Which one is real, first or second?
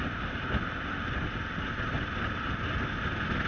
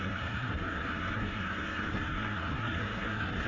first